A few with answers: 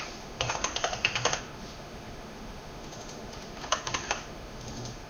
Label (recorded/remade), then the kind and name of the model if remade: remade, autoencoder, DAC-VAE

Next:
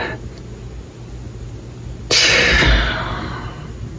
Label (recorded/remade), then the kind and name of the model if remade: recorded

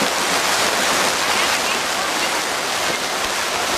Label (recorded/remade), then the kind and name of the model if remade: recorded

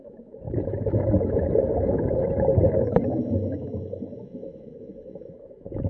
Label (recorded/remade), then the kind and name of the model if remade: remade, autoencoder, DAC-VAE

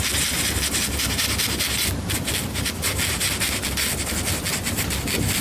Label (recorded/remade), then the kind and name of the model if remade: recorded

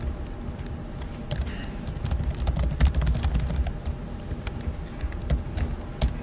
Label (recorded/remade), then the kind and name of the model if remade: recorded